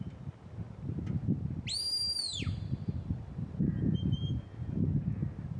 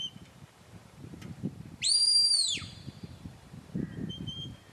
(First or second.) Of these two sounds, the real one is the first